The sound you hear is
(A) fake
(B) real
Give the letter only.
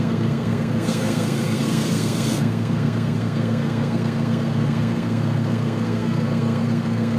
A